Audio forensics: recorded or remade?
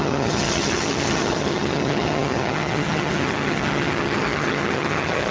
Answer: remade